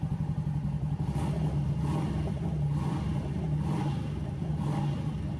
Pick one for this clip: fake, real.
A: real